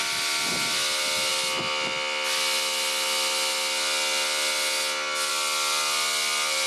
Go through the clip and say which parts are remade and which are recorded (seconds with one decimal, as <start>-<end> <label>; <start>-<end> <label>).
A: 0.0-6.7 recorded